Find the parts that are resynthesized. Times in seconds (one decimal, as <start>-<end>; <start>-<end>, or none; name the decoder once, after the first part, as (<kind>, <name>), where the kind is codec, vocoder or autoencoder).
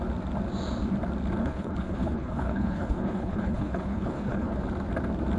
1.4-4.6 (codec, HILCodec)